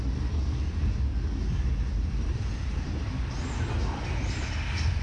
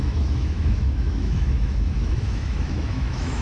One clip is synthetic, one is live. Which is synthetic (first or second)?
second